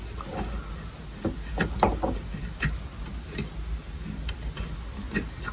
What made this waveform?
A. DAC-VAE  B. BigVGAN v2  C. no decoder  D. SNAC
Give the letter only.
C